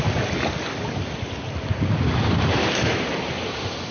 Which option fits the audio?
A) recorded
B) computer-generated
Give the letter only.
A